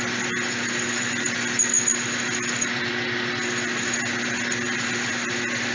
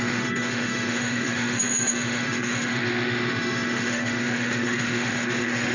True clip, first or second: first